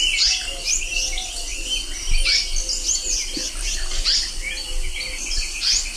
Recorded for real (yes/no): yes